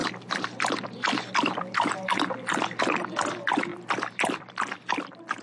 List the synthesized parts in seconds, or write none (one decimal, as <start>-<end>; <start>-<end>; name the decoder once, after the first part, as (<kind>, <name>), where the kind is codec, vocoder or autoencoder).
3.7-4.4 (vocoder, BigVGAN v2)